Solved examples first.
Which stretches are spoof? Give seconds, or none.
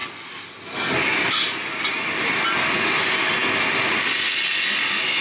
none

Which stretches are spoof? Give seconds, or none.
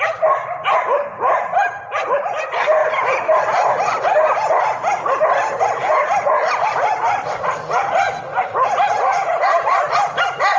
none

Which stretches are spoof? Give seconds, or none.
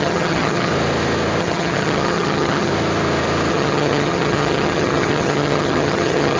0.0-0.7 (vocoder, HiFi-GAN); 1.4-2.7; 3.5-6.4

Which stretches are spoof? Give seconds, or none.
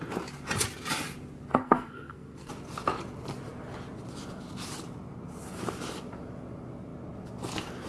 1.5-2.5 (codec, SNAC)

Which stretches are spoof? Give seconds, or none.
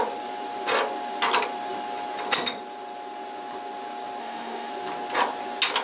4.2-4.7 (autoencoder, DAC-VAE)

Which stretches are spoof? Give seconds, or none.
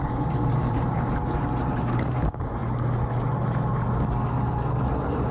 0.0-2.6 (vocoder, BigVGAN v2)